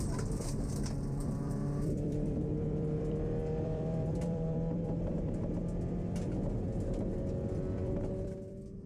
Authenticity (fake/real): fake